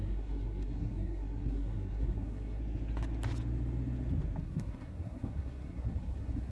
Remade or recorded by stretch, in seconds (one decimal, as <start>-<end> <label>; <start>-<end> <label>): 0.0-2.6 remade; 2.6-4.4 recorded; 4.4-6.5 remade